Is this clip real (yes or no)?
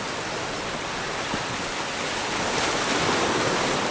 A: yes